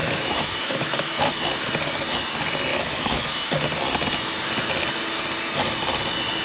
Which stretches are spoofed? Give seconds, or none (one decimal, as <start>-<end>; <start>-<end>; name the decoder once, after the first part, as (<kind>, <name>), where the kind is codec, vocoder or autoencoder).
0.0-1.3 (autoencoder, DAC-VAE); 2.7-3.5